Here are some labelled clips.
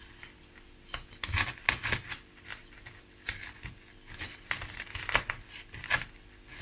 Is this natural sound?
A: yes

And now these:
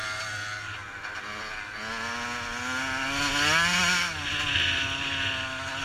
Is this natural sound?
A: yes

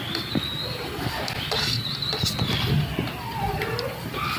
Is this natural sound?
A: no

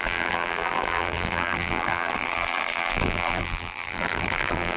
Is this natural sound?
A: no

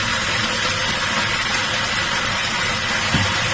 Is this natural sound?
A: yes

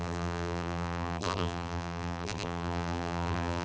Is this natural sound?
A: no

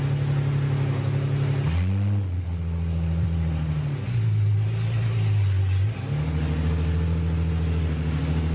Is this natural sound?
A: yes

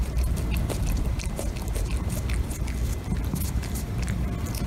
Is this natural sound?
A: yes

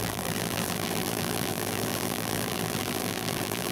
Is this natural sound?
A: no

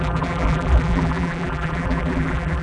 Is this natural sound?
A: no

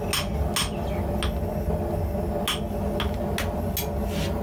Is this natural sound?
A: yes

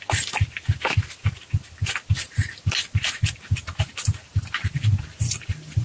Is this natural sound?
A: yes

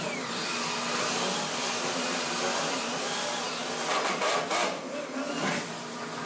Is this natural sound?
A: yes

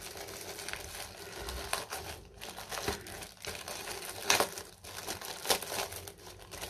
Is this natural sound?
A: yes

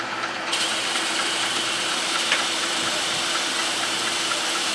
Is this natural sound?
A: no